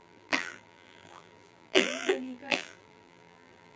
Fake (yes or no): yes